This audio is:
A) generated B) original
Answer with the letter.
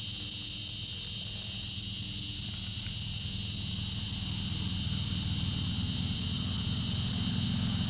B